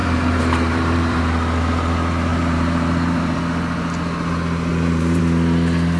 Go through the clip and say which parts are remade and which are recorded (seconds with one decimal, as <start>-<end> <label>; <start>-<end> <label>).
0.0-1.2 remade; 1.2-2.3 recorded; 2.3-3.4 remade; 3.4-4.7 recorded; 4.7-5.2 remade; 5.2-6.0 recorded